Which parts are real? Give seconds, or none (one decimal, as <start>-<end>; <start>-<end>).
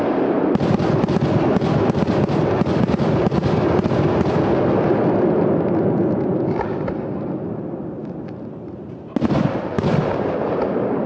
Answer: 0.0-11.1